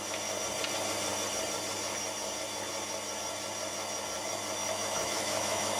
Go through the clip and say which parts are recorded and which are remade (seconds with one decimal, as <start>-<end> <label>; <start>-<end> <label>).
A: 0.0-4.6 recorded; 4.6-5.8 remade